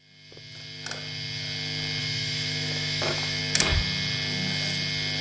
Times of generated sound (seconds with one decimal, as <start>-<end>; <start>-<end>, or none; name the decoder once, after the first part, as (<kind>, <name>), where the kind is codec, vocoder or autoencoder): 2.0-3.4 (autoencoder, DAC-VAE)